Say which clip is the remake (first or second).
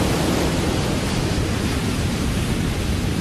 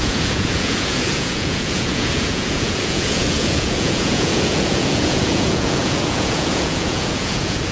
second